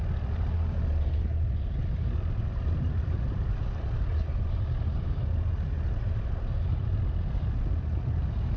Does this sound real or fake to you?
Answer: real